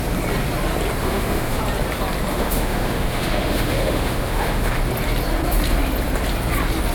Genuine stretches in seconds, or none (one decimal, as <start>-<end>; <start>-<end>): 0.0-1.0; 1.6-2.3; 4.8-6.9